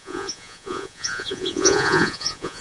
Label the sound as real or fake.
fake